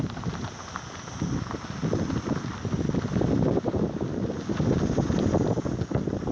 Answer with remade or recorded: recorded